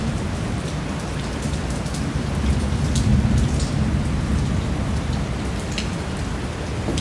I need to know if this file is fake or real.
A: real